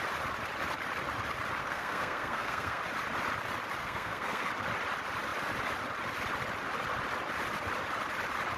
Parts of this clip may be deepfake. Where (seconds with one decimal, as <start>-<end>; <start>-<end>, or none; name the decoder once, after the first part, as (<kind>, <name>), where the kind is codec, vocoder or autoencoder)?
1.6-2.8 (codec, SNAC); 3.8-4.5